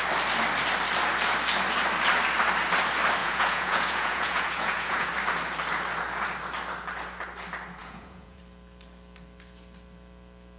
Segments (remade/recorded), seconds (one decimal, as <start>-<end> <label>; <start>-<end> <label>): 0.0-3.2 recorded; 3.2-5.1 remade; 5.1-7.8 recorded; 7.8-8.4 remade; 8.4-10.6 recorded